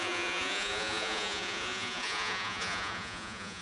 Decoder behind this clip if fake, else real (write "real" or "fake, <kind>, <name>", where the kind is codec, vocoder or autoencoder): fake, vocoder, Vocos